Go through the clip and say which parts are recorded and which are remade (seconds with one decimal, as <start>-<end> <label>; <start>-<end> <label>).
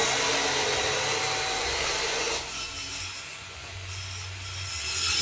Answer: 0.0-1.6 recorded; 1.6-4.7 remade; 4.7-5.2 recorded